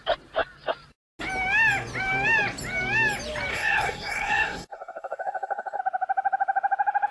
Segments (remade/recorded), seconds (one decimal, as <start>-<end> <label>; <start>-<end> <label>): 0.0-3.5 recorded; 3.5-5.8 remade; 5.8-7.1 recorded